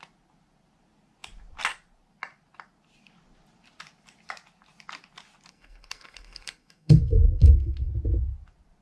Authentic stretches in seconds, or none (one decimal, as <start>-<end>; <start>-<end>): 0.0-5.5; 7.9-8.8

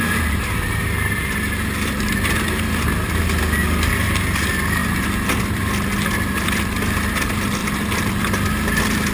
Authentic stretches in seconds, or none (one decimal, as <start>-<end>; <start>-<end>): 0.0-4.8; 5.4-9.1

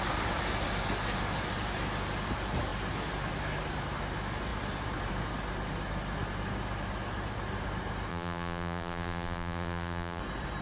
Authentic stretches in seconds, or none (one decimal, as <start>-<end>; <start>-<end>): 0.0-8.1; 10.2-10.6